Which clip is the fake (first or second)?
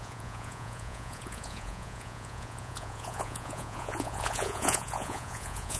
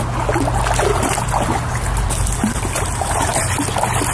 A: first